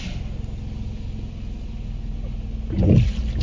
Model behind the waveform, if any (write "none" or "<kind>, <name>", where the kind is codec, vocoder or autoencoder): none